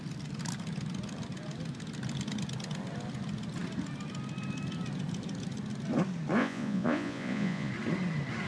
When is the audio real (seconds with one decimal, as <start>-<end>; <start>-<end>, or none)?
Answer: 0.0-6.4; 7.7-8.5